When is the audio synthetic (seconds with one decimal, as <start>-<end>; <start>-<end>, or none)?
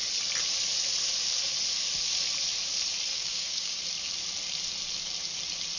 3.1-3.8